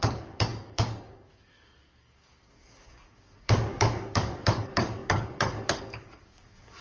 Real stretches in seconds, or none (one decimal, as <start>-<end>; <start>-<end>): none

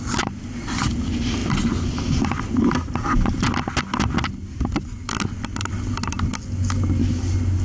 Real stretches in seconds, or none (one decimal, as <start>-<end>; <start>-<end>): 0.0-7.6

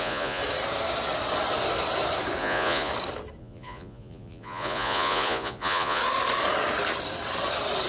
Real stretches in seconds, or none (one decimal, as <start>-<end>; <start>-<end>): 0.4-2.4; 2.9-3.4; 6.0-7.9